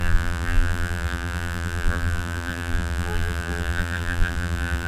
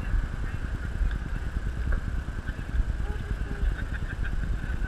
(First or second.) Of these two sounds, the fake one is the first